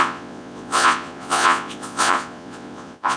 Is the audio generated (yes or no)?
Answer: yes